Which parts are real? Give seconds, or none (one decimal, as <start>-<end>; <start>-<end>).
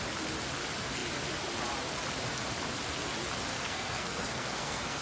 0.0-3.5